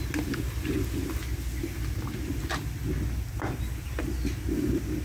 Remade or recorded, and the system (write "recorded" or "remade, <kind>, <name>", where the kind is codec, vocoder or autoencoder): recorded